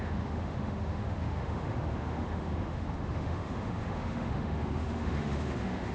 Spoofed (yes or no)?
yes